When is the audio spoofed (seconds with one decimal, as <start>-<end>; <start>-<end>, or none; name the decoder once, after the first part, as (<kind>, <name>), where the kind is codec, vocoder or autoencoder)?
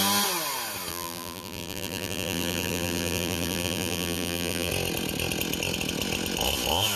0.9-4.7 (vocoder, BigVGAN v2)